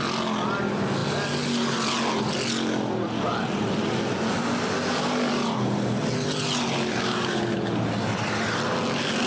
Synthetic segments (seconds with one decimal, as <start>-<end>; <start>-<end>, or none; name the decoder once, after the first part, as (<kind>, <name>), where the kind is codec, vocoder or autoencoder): none